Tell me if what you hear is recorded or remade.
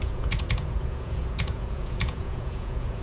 remade